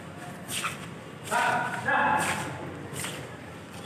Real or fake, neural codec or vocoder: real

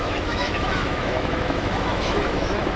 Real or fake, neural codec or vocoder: fake, autoencoder, DAC-VAE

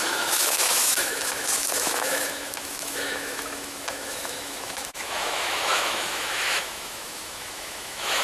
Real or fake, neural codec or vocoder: fake, autoencoder, DAC-VAE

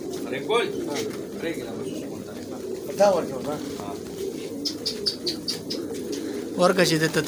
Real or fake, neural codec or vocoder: real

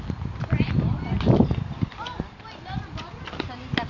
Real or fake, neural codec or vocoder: real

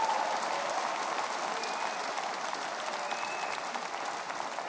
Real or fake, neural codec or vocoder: real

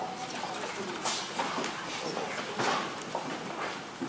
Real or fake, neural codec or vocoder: real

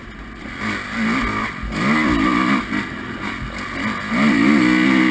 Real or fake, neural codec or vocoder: real